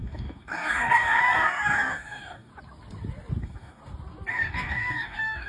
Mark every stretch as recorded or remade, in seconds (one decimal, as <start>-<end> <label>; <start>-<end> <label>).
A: 0.0-2.5 remade; 2.5-3.4 recorded; 3.4-3.8 remade; 3.8-4.3 recorded; 4.3-5.5 remade